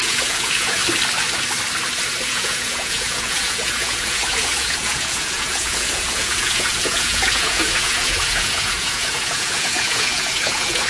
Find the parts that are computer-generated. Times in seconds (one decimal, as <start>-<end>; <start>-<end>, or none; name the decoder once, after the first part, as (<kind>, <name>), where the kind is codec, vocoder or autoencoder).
0.0-0.8 (vocoder, Vocos); 2.3-10.9